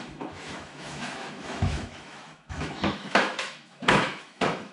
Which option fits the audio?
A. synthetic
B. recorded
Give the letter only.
A